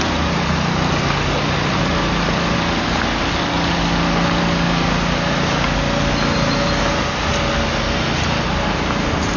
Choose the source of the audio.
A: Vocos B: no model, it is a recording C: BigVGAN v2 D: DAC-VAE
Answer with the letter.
B